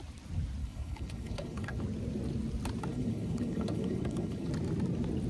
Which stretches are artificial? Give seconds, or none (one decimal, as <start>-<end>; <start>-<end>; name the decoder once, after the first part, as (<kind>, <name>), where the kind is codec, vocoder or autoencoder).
0.6-1.8 (codec, HILCodec); 2.9-4.5